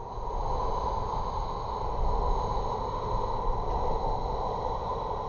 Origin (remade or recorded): recorded